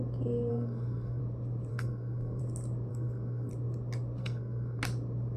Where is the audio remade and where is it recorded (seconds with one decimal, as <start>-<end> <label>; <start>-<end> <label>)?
0.0-0.5 recorded; 0.5-1.2 remade; 1.2-1.7 recorded; 1.7-2.4 remade; 2.4-2.9 recorded; 2.9-3.5 remade; 3.5-4.2 recorded; 4.2-4.8 remade; 4.8-5.4 recorded